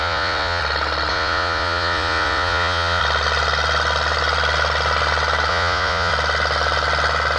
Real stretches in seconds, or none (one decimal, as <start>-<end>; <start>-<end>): 0.6-1.1; 3.0-5.5; 6.1-7.4